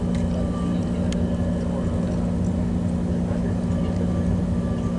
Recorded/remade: recorded